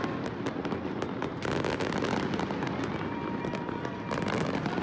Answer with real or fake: real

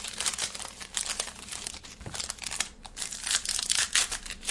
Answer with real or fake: fake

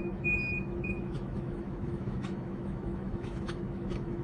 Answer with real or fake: fake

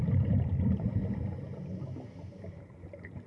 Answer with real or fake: real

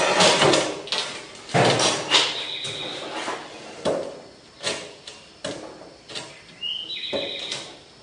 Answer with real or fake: real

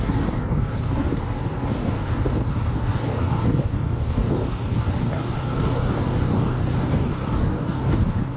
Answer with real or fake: fake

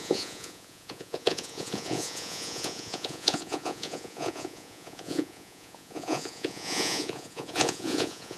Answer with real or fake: fake